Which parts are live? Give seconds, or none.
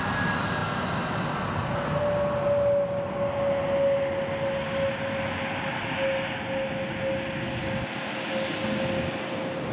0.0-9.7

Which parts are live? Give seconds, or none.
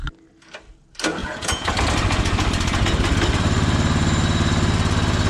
0.0-1.2; 1.7-5.3